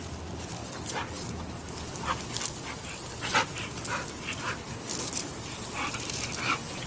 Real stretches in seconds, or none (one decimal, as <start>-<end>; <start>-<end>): 0.0-6.9